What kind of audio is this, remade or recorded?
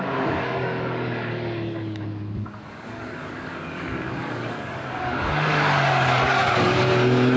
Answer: remade